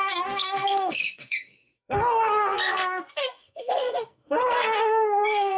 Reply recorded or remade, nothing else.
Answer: remade